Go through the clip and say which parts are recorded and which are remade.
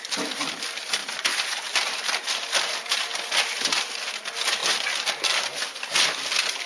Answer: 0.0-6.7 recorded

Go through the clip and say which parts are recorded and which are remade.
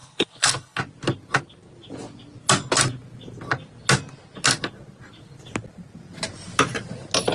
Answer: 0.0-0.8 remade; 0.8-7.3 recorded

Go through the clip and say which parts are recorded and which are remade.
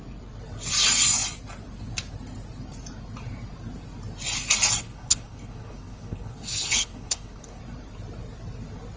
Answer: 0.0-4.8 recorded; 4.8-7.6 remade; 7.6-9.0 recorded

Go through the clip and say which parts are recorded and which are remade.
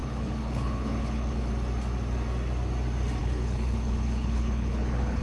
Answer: 0.0-1.5 remade; 1.5-3.2 recorded; 3.2-5.2 remade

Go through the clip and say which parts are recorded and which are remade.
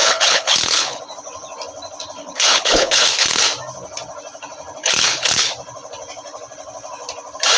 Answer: 0.0-1.0 remade; 1.0-2.2 recorded; 2.2-3.4 remade; 3.4-4.8 recorded; 4.8-5.5 remade; 5.5-7.6 recorded